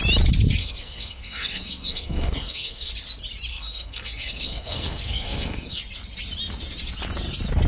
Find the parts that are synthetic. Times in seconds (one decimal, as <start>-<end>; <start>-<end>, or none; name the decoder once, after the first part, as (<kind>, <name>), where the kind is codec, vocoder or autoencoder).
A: 0.6-2.9 (codec, SNAC); 3.5-5.8